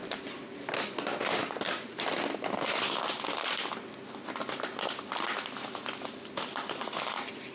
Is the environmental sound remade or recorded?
recorded